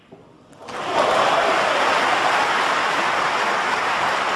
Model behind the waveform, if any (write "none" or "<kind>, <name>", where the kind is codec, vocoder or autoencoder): none